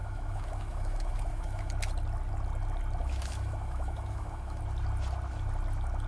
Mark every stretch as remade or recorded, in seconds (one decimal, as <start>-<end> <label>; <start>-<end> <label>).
0.0-1.7 remade; 1.7-3.0 recorded; 3.0-4.6 remade; 4.6-6.1 recorded